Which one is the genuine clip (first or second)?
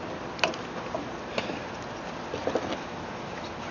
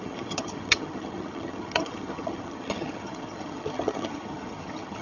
first